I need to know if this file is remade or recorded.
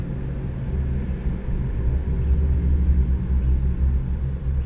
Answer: recorded